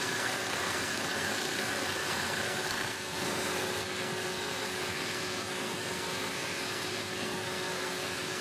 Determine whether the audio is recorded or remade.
remade